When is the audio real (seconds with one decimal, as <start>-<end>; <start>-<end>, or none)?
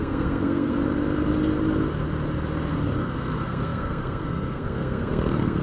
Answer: 0.8-3.0